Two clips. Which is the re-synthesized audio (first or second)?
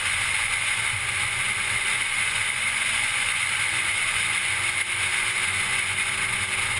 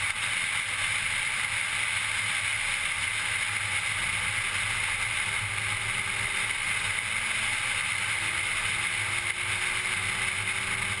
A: first